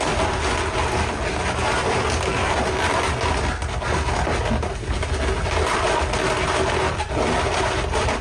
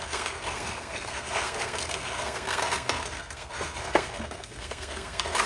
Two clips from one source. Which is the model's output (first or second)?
second